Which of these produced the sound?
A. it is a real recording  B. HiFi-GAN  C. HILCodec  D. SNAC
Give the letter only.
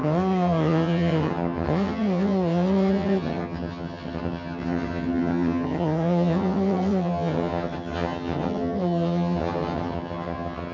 B